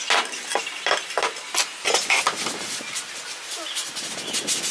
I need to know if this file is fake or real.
real